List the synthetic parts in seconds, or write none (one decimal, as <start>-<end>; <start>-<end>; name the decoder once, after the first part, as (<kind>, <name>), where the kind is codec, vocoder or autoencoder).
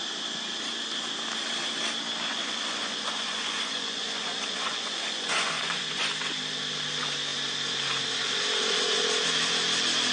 2.3-6.0 (vocoder, Vocos)